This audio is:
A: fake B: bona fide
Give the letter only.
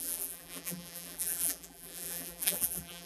A